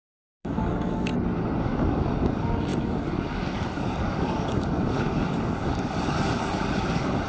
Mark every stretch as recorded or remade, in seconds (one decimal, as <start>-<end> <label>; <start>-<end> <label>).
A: 0.0-1.1 remade; 1.1-1.6 recorded; 1.6-7.3 remade